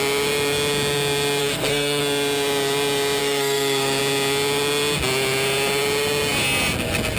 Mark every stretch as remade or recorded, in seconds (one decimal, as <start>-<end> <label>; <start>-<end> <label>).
0.0-1.4 recorded; 1.4-2.0 remade; 2.0-3.2 recorded; 3.2-4.0 remade; 4.0-7.2 recorded